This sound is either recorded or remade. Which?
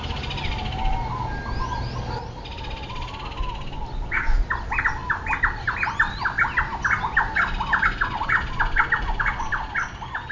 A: recorded